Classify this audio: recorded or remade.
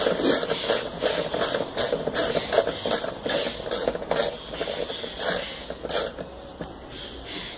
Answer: recorded